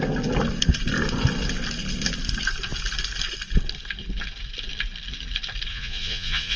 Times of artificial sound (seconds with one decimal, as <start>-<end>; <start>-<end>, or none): 5.7-6.6